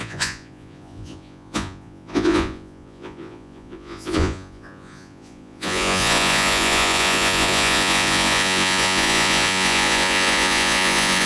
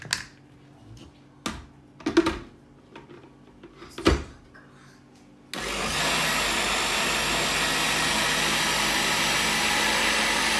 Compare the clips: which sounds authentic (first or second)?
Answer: second